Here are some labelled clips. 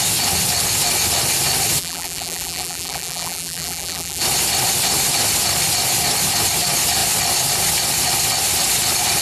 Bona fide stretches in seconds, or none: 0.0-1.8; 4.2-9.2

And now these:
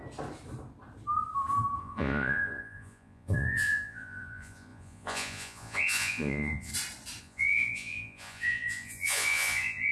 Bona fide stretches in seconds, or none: 0.0-1.8; 6.7-7.2

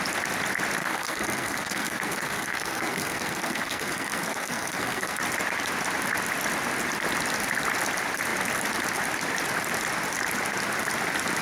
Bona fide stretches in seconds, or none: 0.0-0.8; 5.2-11.4

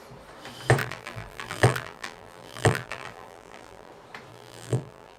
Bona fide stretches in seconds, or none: 0.0-0.8; 3.9-4.3

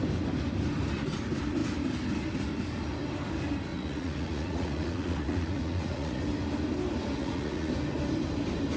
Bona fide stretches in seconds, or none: 0.0-3.7; 6.2-7.2; 7.7-8.8

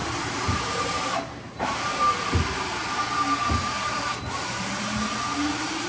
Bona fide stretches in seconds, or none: 3.0-3.6; 4.2-5.9

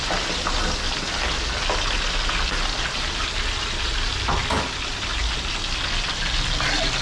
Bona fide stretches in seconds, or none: 0.0-7.0